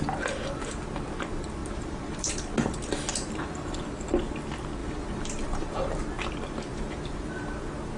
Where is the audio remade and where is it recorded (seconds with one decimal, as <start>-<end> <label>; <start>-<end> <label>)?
0.0-1.6 recorded; 1.6-2.3 remade; 2.3-3.1 recorded; 3.1-4.0 remade; 4.0-4.8 recorded; 4.8-6.0 remade; 6.0-6.7 recorded; 6.7-7.5 remade; 7.5-8.0 recorded